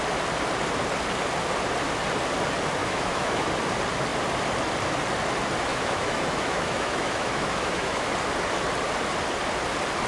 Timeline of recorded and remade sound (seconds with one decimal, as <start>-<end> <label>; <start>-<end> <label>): 0.0-2.8 recorded; 2.8-3.5 remade; 3.5-5.7 recorded; 5.7-8.1 remade; 8.1-10.1 recorded